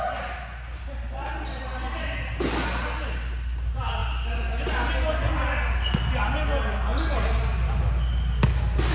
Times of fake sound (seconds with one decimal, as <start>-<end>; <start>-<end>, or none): none